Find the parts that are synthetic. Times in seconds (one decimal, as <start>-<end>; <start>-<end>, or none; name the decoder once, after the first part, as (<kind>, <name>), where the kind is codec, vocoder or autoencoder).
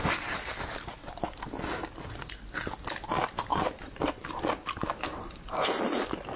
0.0-1.2 (vocoder, BigVGAN v2); 3.5-4.3